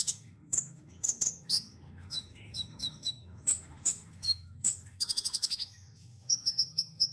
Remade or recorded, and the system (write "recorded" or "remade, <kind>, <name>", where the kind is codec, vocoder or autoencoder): remade, autoencoder, DAC-VAE